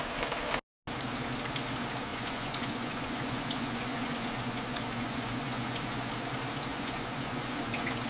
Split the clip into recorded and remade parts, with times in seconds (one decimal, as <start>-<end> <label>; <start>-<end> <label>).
0.0-2.1 recorded; 2.1-6.1 remade; 6.1-6.7 recorded; 6.7-8.1 remade